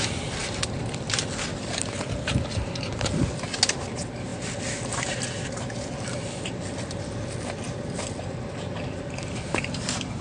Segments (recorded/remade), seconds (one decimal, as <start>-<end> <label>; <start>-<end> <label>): 0.0-10.2 recorded